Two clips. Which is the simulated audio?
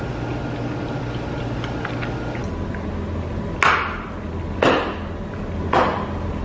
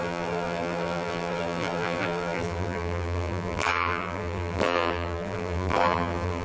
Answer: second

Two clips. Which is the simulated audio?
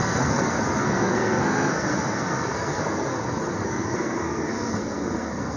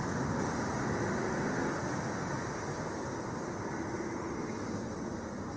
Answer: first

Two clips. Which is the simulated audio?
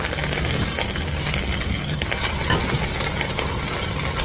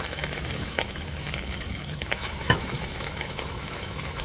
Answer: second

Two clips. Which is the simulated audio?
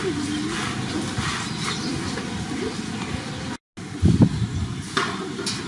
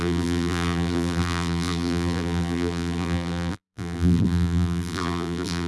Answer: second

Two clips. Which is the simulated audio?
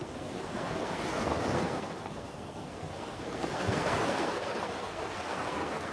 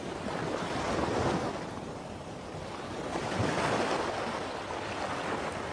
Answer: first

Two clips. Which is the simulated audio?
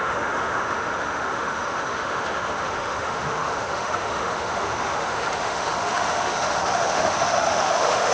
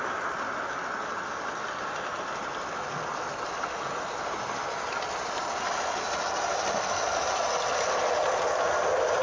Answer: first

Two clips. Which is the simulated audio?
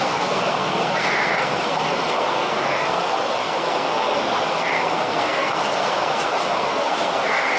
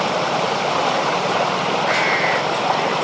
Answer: first